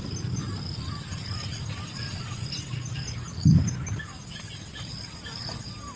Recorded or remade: recorded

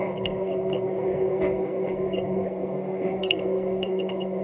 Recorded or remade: remade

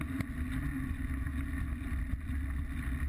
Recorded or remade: recorded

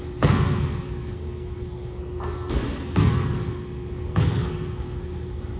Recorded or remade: remade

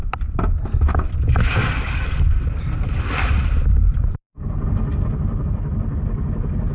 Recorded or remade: recorded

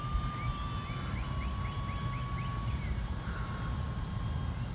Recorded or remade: recorded